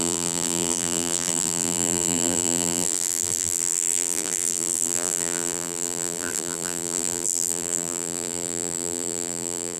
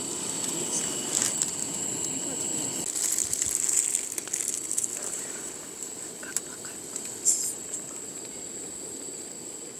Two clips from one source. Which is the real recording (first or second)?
second